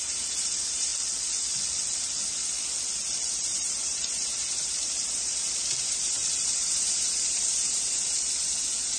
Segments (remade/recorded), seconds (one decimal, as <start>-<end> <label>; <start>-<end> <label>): 0.0-0.9 remade; 0.9-3.5 recorded; 3.5-9.0 remade